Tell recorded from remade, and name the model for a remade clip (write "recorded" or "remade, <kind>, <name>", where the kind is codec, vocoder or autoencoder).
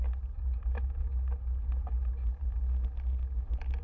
recorded